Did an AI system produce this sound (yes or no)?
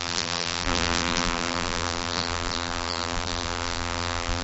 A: yes